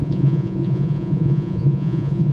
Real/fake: fake